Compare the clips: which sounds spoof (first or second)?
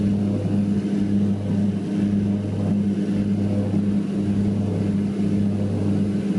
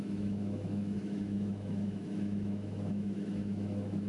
second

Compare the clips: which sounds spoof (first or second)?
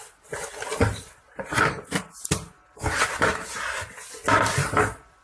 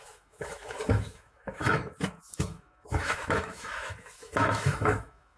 second